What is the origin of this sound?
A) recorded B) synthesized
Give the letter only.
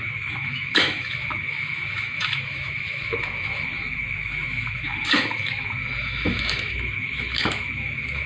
B